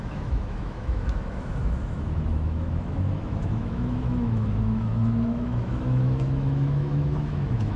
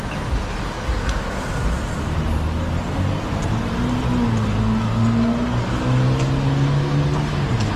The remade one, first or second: first